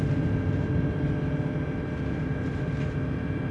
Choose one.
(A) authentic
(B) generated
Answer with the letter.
A